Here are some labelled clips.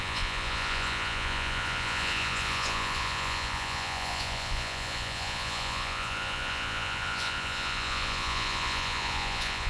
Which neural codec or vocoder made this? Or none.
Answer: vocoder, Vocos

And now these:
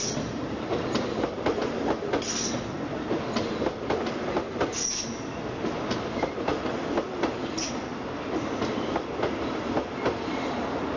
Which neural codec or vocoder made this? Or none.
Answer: none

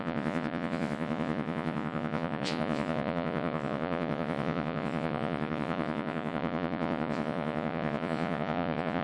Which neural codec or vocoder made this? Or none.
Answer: vocoder, Vocos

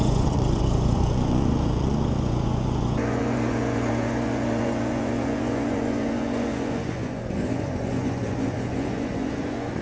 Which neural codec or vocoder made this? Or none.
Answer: vocoder, Vocos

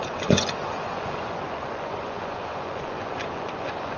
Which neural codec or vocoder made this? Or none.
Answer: vocoder, Vocos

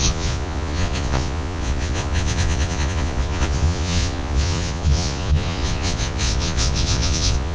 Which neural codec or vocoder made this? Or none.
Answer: vocoder, Vocos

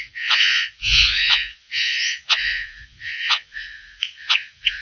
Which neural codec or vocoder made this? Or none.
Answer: vocoder, Vocos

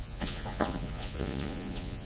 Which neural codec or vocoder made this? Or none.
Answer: vocoder, Vocos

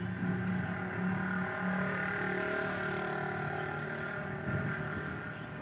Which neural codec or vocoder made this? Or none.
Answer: none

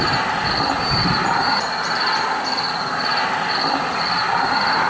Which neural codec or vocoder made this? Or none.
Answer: none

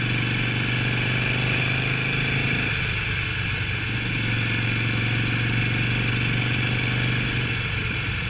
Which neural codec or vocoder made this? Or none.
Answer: none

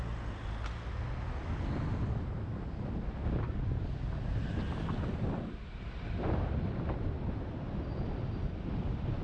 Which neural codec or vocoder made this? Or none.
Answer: none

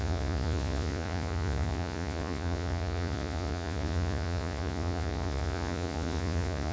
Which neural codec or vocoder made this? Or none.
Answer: vocoder, Vocos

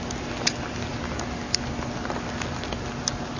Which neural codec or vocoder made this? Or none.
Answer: none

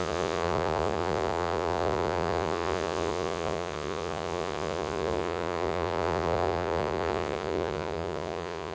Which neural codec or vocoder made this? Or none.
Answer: vocoder, Vocos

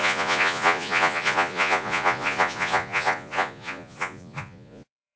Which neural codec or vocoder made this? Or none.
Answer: vocoder, Vocos